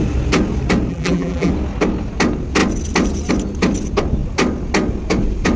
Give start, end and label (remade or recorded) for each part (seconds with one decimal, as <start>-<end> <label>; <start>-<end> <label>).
0.0-0.9 recorded; 0.9-1.5 remade; 1.5-5.6 recorded